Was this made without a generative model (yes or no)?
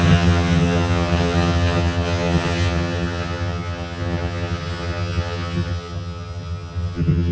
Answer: no